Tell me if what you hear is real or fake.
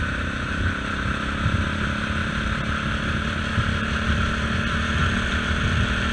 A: real